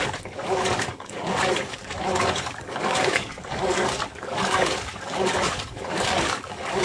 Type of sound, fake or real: fake